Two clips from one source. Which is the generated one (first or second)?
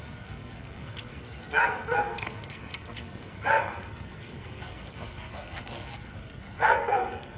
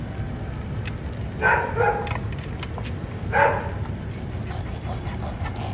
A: first